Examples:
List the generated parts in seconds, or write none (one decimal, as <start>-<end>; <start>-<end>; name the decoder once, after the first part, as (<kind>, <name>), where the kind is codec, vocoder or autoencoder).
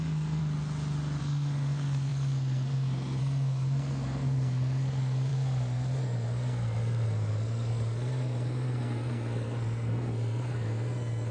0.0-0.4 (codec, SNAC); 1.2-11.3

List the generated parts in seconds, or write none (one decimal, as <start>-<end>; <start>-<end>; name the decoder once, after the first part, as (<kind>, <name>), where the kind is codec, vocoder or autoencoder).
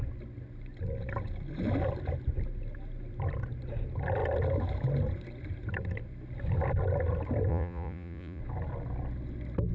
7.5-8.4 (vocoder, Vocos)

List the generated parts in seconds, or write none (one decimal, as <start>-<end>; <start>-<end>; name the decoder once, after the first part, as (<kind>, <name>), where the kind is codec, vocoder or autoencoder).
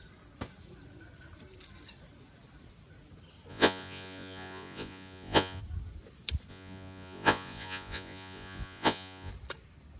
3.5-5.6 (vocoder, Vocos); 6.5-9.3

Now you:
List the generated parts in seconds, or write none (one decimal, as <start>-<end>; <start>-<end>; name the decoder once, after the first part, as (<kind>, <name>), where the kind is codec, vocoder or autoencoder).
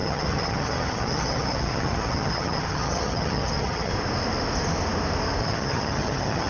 0.0-3.9 (vocoder, HiFi-GAN); 5.4-6.5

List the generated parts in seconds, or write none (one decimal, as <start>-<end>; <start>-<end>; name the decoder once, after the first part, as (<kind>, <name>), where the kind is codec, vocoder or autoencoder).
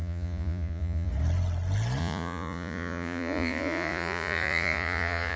0.0-1.1 (vocoder, Vocos); 2.0-5.4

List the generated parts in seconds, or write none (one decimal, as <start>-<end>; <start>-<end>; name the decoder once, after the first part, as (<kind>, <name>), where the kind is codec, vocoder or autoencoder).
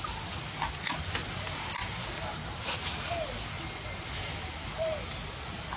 2.2-3.1 (vocoder, BigVGAN v2)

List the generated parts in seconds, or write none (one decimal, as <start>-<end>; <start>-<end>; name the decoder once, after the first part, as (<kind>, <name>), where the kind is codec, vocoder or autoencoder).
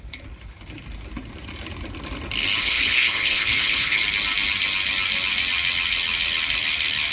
2.6-4.0 (codec, HILCodec)